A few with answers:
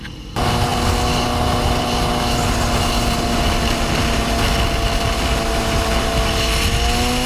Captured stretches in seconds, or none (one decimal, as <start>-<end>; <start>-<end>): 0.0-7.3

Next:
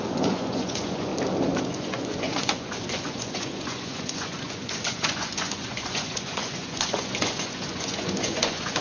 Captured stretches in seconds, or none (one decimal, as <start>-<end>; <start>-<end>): 1.1-1.6

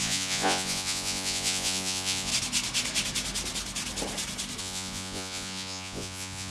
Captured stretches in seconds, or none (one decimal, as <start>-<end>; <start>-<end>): 2.3-4.6

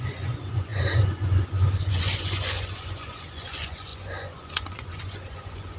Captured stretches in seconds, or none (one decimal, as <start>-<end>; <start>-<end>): none

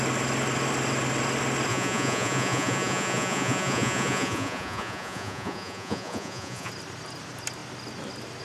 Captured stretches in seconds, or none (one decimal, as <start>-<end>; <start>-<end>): 0.0-1.7; 6.7-8.4

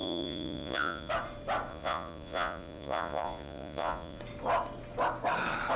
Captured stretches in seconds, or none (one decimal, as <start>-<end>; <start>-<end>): 1.1-1.7; 4.2-5.8

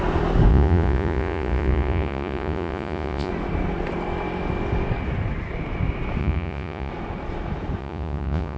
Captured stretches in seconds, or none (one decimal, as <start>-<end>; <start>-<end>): 0.0-0.5; 3.3-6.2; 6.9-7.8